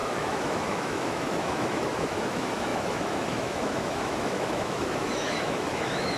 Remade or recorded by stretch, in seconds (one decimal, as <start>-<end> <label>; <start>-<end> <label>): 0.0-6.2 remade